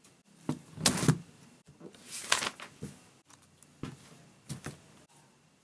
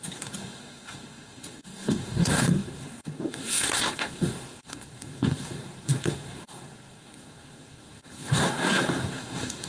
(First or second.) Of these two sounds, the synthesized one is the second